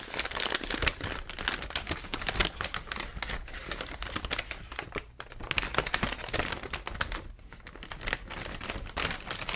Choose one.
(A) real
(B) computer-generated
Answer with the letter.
A